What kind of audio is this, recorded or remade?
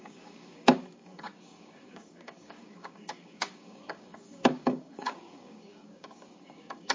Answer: remade